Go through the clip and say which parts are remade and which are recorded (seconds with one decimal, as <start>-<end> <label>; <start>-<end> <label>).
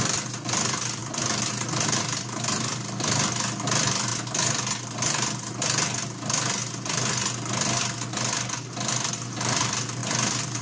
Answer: 0.0-4.1 remade; 4.1-9.1 recorded; 9.1-10.6 remade